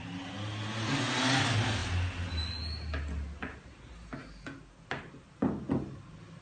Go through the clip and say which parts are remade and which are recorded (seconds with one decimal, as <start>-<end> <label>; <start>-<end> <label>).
0.0-6.4 recorded